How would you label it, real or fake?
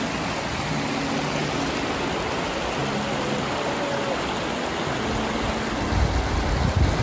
real